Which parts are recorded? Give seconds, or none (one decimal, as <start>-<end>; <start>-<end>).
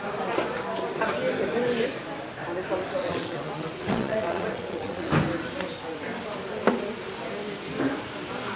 0.0-3.0; 5.1-8.6